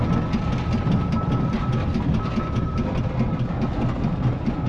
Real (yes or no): yes